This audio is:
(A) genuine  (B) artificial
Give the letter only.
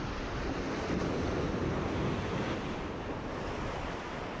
A